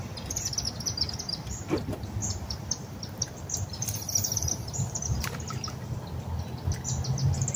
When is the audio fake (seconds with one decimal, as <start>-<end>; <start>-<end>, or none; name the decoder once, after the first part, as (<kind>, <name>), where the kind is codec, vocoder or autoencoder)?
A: 2.2-5.4 (vocoder, BigVGAN v2)